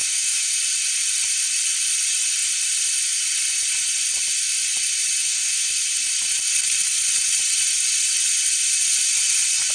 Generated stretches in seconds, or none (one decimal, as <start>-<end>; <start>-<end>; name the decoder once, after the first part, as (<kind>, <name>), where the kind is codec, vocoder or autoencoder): 0.0-0.6 (autoencoder, DAC-VAE); 5.2-5.7